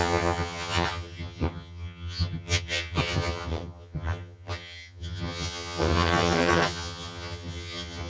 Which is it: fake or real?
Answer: fake